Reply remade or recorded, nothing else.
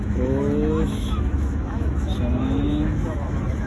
remade